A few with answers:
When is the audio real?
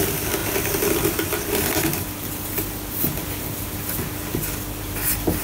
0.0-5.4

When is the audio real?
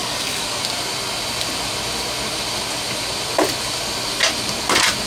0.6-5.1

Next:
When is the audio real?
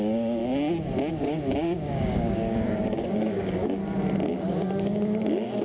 0.4-1.1; 3.8-4.3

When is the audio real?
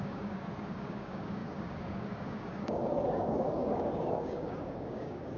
none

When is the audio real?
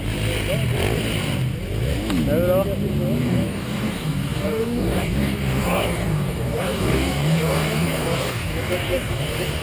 0.0-3.2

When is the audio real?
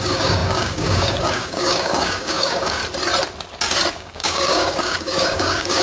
2.8-3.9